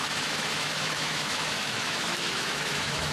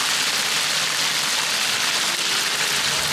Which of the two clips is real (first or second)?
second